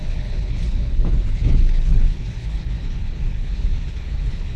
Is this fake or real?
fake